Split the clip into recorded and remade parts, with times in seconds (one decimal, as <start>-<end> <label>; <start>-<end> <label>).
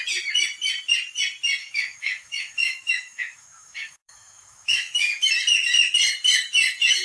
0.0-1.6 recorded; 1.6-5.3 remade; 5.3-7.0 recorded